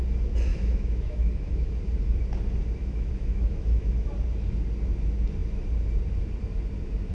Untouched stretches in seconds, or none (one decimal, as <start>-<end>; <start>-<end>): 0.0-0.5; 1.7-2.8; 4.1-7.1